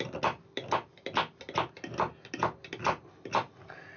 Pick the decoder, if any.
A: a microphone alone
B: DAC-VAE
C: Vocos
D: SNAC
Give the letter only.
A